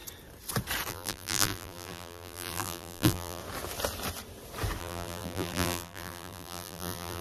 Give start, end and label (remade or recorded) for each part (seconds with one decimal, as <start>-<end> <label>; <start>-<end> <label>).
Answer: 0.0-0.9 recorded; 0.9-3.4 remade; 3.4-4.8 recorded; 4.8-7.2 remade